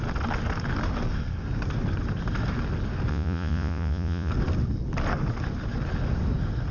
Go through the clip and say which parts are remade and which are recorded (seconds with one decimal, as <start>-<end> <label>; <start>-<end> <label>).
0.0-3.1 recorded; 3.1-4.3 remade; 4.3-6.7 recorded